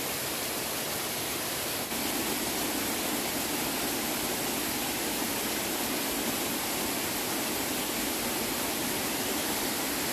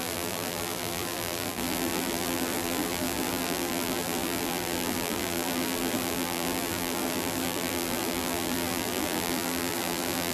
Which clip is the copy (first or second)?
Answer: second